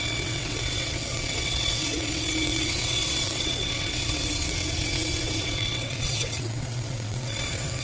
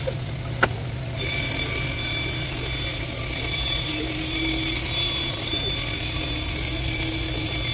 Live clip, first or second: second